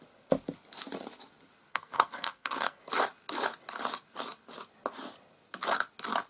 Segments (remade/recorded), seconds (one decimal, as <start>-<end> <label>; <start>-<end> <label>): 0.0-1.7 recorded; 1.7-2.8 remade; 2.8-6.3 recorded